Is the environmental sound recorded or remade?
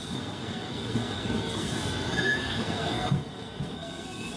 remade